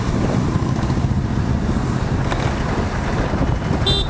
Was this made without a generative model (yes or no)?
yes